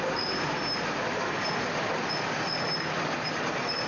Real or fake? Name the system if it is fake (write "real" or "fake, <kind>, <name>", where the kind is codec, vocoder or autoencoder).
real